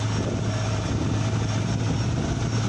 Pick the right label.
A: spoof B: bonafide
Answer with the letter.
B